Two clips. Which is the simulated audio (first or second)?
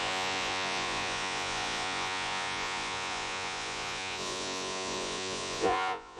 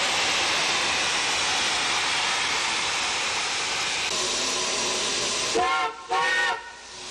first